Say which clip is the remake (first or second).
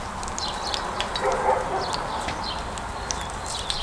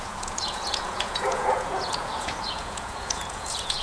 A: second